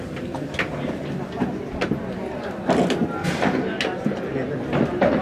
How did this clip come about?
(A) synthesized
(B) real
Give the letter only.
B